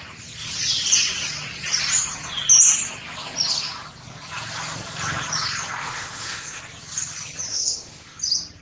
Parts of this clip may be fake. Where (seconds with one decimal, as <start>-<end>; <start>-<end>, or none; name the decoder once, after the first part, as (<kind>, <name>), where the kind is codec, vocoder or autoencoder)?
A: 5.8-6.6 (autoencoder, DAC-VAE); 7.5-8.2